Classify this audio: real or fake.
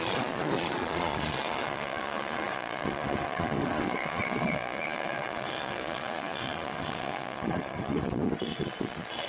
fake